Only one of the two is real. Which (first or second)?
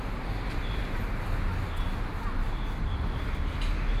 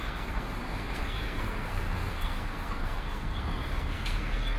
first